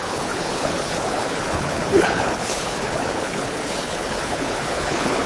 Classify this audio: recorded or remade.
remade